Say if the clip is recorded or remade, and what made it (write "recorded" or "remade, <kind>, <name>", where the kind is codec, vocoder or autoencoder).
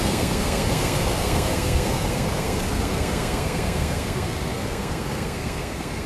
remade, codec, SNAC